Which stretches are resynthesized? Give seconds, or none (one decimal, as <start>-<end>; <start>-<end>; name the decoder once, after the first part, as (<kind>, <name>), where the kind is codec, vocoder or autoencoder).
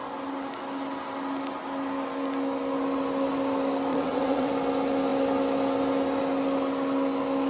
3.9-4.5 (vocoder, WaveNeXt)